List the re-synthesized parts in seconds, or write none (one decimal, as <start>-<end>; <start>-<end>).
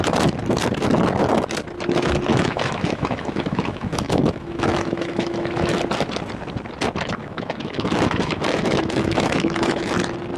2.3-5.8; 7.2-9.9